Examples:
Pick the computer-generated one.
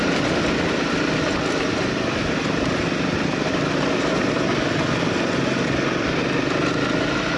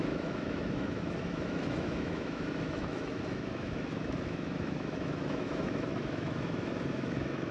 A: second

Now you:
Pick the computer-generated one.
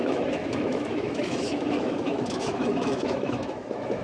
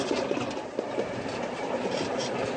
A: first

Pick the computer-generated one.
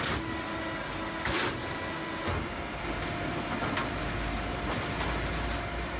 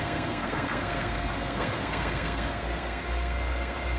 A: second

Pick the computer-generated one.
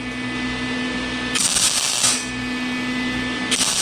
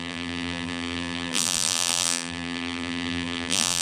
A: second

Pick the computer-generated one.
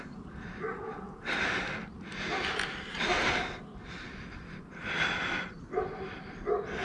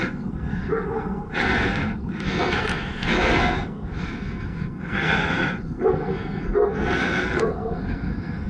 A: second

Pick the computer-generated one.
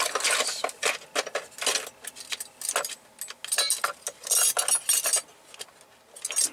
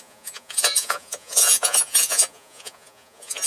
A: second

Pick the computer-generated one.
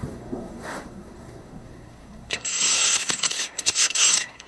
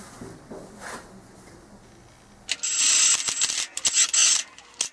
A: first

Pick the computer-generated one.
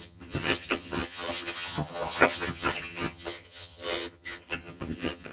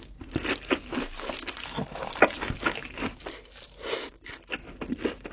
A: first